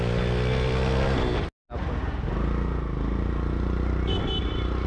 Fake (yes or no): no